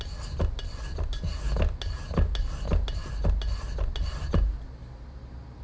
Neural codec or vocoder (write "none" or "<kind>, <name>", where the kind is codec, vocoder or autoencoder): none